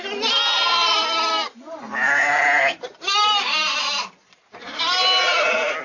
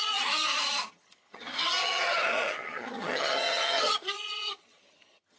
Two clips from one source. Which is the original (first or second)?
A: first